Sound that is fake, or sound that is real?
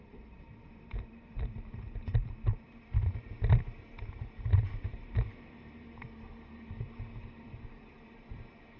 fake